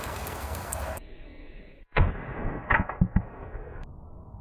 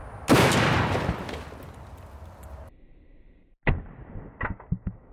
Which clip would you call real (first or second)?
second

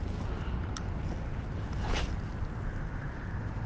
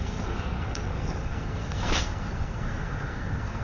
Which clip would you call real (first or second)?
first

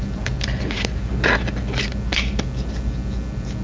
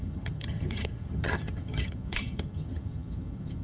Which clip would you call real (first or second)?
first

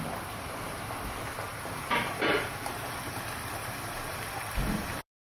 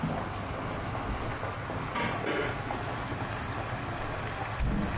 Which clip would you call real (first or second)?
second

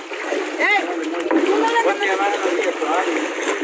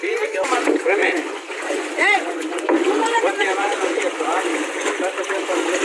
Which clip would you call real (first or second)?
first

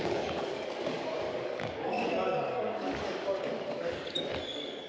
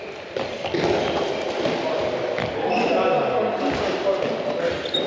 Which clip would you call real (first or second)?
second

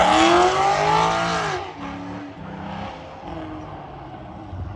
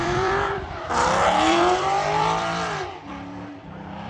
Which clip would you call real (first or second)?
first